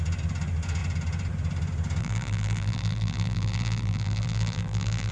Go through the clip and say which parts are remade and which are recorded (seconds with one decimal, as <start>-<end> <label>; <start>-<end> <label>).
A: 0.0-2.0 recorded; 2.0-5.1 remade